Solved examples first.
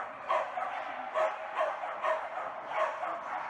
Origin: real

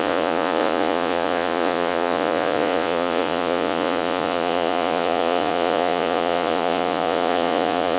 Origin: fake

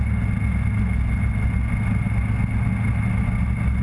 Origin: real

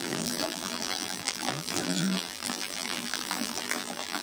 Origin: fake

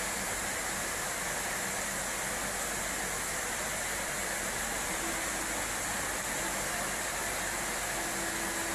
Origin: real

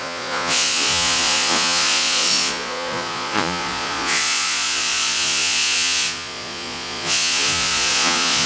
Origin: fake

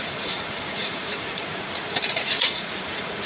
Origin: fake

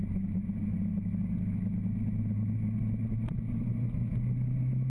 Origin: real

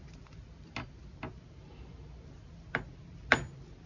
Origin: real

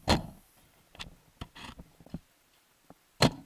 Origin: real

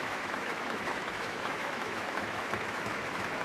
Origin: fake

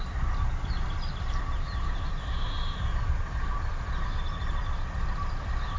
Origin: real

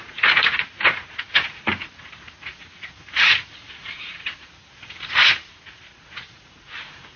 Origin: fake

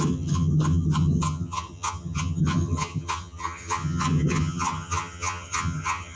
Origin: fake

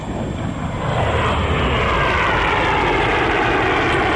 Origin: real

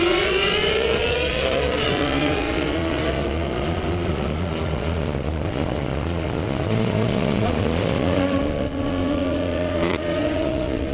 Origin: fake